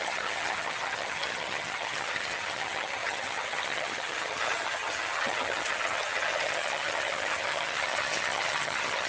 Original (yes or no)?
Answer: no